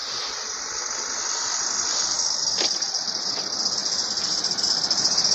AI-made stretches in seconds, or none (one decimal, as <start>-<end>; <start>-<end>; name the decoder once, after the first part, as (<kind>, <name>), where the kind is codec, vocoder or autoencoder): 0.0-3.2 (vocoder, BigVGAN v2)